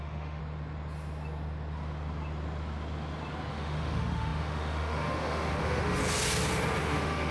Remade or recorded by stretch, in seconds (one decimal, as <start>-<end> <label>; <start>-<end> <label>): 0.0-0.4 remade; 0.4-3.5 recorded; 3.5-6.0 remade; 6.0-6.8 recorded; 6.8-7.3 remade